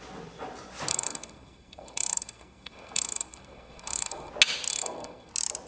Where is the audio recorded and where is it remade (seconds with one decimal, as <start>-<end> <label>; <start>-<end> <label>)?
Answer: 0.0-0.9 recorded; 0.9-4.3 remade; 4.3-4.7 recorded; 4.7-5.3 remade; 5.3-5.7 recorded